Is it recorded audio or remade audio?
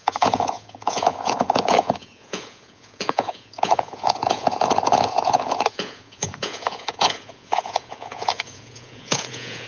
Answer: remade